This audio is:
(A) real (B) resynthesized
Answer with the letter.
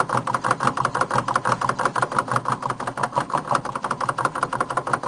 A